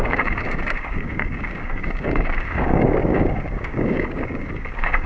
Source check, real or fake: fake